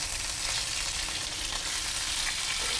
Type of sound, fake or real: real